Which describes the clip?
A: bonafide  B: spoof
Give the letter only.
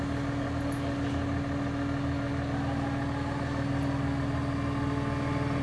A